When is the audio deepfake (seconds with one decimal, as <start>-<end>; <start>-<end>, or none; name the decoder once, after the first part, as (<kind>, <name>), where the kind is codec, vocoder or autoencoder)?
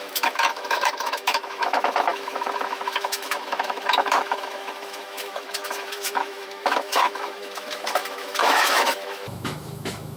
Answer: 0.0-10.2 (autoencoder, DAC-VAE)